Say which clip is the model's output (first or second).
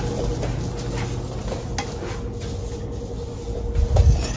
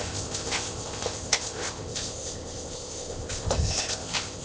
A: second